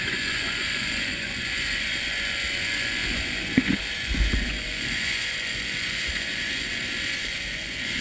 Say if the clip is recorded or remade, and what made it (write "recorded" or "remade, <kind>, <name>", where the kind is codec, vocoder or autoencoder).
remade, vocoder, Vocos